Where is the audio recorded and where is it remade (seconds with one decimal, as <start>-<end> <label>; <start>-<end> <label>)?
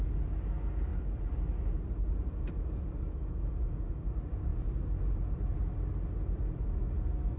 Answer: 0.0-3.1 recorded; 3.1-4.1 remade; 4.1-7.4 recorded